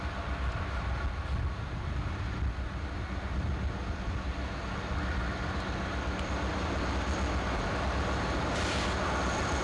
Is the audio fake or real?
real